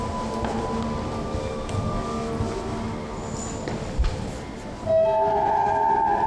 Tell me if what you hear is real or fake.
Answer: real